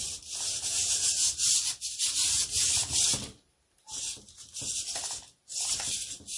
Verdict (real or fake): real